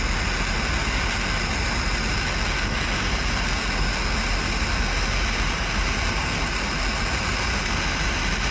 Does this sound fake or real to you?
real